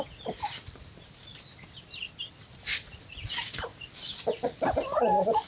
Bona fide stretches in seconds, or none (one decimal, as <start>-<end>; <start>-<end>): 0.0-5.5